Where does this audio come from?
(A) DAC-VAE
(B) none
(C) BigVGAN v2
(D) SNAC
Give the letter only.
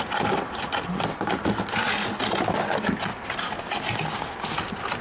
B